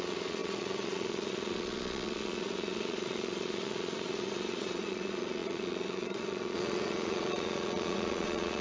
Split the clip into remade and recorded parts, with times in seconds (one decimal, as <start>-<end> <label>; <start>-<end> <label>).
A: 0.0-8.6 remade